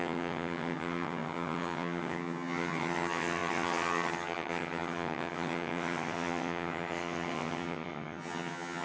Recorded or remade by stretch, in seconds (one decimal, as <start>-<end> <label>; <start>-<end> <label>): 0.0-8.8 remade